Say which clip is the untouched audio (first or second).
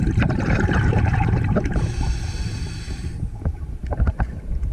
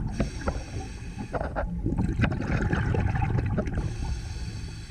second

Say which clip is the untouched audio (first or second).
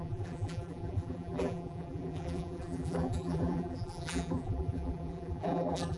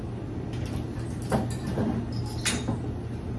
second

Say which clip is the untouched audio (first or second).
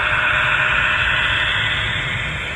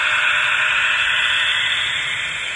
first